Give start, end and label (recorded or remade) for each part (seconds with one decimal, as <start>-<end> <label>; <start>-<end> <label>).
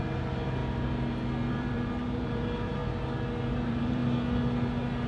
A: 0.0-0.6 remade; 0.6-1.5 recorded; 1.5-2.8 remade; 2.8-3.5 recorded; 3.5-4.0 remade; 4.0-5.1 recorded